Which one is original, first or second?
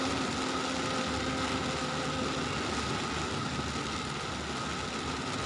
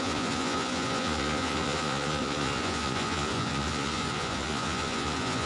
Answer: first